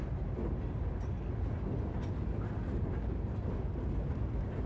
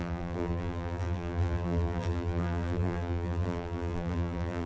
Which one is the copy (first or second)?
second